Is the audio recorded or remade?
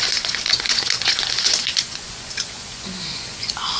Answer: remade